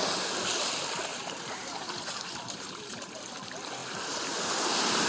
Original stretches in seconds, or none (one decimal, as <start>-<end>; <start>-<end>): 0.0-1.1; 3.3-5.1